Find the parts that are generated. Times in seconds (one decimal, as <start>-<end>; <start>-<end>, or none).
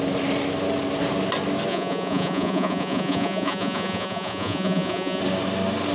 1.7-5.2